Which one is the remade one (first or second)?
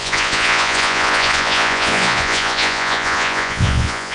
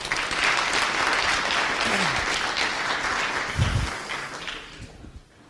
first